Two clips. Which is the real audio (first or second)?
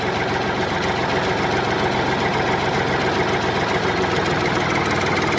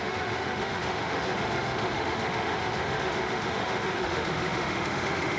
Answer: first